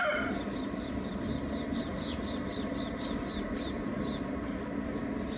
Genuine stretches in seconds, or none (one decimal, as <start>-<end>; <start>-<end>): 0.0-5.4